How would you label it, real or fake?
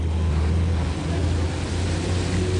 real